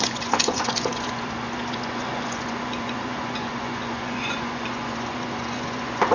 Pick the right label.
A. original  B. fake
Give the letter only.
B